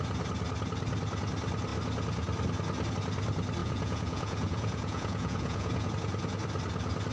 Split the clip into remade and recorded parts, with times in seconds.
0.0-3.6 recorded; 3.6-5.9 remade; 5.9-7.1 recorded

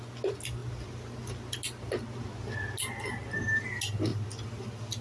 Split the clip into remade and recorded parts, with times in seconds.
0.0-5.0 recorded